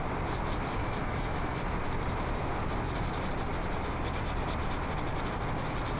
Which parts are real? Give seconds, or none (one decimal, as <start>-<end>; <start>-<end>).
0.0-0.8; 1.6-6.0